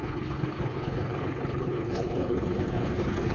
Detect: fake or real fake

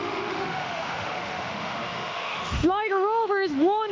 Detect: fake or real fake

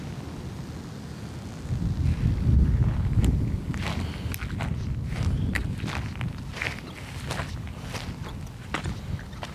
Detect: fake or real real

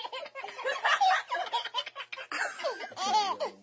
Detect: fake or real real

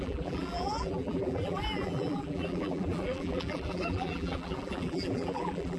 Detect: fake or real fake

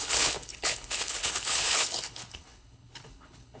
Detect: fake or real fake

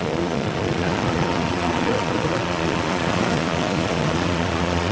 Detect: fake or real fake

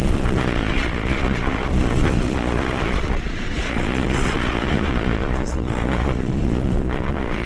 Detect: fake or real fake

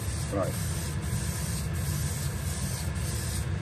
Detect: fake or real real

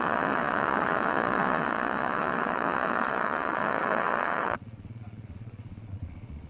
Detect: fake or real fake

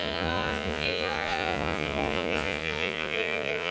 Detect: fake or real fake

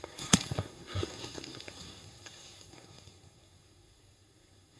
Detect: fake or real fake